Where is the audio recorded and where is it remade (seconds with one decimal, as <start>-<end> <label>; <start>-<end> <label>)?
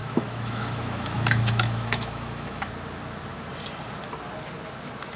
0.0-2.7 remade; 2.7-5.2 recorded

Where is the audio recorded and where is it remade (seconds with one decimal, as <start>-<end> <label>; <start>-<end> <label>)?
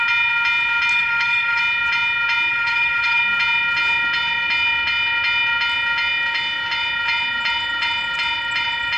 0.0-0.9 recorded; 0.9-1.6 remade; 1.6-2.5 recorded; 2.5-3.2 remade; 3.2-9.0 recorded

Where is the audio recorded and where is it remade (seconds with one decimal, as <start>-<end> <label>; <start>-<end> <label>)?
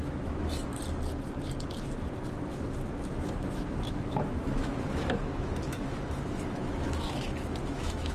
0.0-0.7 remade; 0.7-3.1 recorded; 3.1-8.1 remade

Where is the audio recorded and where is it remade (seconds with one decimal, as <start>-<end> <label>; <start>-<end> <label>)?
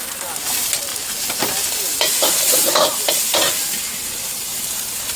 0.0-5.2 recorded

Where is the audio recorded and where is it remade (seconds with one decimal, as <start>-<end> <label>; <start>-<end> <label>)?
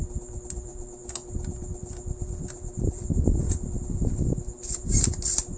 0.0-5.6 recorded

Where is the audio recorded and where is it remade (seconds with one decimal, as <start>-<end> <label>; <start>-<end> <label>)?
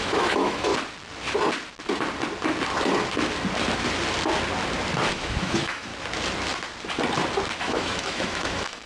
0.0-0.7 remade; 0.7-5.1 recorded; 5.1-5.9 remade; 5.9-7.6 recorded; 7.6-8.9 remade